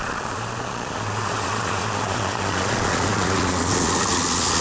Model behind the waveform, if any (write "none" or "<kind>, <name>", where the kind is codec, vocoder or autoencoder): vocoder, Vocos